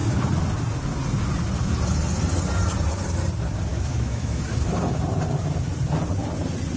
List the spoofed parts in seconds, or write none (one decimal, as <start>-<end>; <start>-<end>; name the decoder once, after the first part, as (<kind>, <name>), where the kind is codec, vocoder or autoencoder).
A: 3.7-4.4 (autoencoder, DAC-VAE)